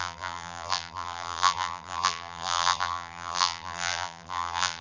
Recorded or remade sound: remade